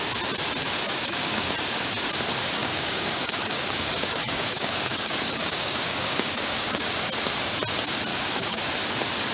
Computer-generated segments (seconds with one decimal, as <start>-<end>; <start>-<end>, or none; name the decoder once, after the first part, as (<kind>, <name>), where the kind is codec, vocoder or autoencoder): 0.6-1.5 (codec, DAC); 2.6-7.1; 8.1-8.6